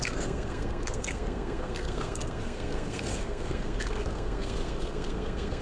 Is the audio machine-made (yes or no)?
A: yes